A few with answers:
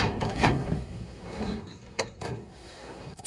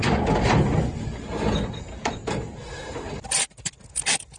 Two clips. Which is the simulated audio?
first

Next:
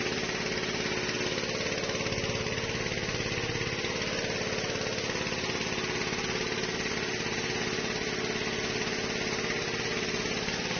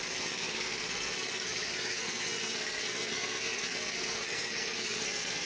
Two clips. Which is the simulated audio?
second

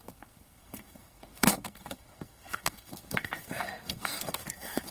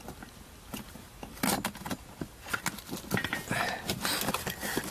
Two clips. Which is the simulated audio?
first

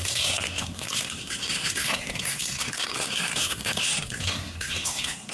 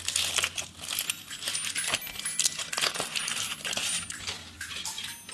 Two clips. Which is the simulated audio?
first